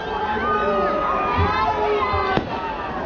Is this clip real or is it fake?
real